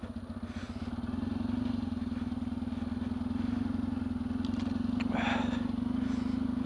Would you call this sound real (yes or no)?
yes